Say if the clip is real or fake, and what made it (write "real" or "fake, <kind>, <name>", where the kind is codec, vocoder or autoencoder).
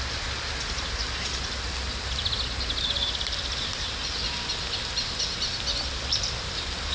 real